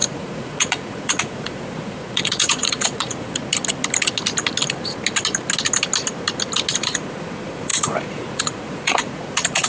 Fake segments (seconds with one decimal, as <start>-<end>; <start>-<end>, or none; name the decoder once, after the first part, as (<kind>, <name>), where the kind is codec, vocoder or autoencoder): 0.0-3.4 (vocoder, Vocos); 6.7-9.7